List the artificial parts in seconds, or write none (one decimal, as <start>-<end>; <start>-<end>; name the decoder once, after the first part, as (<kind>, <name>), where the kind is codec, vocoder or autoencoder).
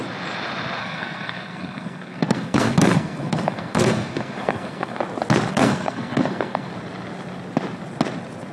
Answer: 0.8-5.0 (codec, SNAC); 5.5-6.7